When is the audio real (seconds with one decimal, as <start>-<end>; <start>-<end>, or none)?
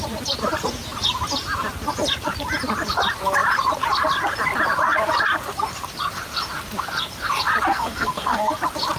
0.0-7.7; 8.5-9.0